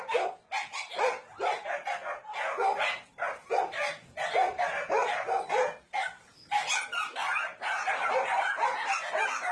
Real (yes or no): yes